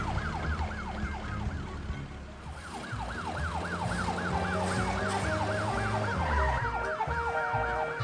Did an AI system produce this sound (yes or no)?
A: no